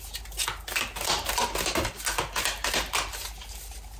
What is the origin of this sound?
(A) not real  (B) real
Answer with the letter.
B